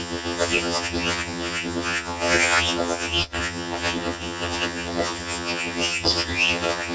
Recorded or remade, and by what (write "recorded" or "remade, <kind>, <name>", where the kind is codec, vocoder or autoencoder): remade, vocoder, HiFi-GAN